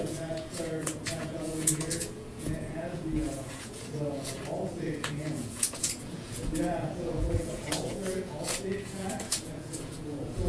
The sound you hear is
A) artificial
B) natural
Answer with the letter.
A